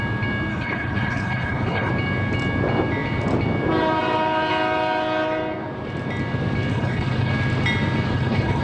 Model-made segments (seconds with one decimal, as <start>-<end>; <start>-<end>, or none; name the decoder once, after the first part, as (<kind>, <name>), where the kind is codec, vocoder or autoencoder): 0.5-1.9 (codec, HILCodec); 6.7-7.3; 8.1-8.6